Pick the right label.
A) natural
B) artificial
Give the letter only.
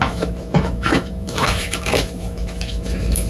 B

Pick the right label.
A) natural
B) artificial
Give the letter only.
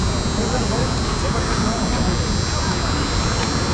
A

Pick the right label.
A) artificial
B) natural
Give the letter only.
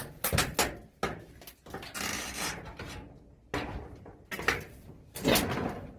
B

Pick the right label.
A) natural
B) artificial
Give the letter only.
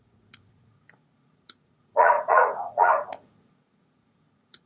B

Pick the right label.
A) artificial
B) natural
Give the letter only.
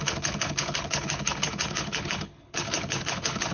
A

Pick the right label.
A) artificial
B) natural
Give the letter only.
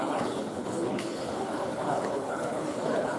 A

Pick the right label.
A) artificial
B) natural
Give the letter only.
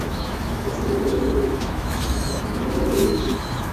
A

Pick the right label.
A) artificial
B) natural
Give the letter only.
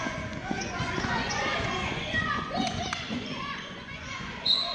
A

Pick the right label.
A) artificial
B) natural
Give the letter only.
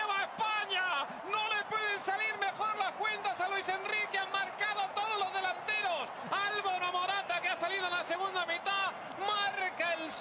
B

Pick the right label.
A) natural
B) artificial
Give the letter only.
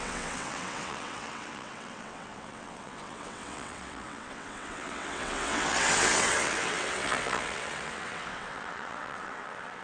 B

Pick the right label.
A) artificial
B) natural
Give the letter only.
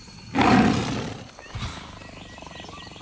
B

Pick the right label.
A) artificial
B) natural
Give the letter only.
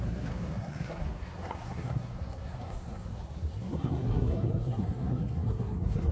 A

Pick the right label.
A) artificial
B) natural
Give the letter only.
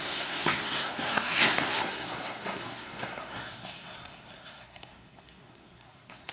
A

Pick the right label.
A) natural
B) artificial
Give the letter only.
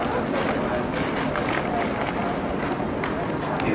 A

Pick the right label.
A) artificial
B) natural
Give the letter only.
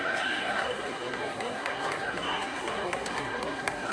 A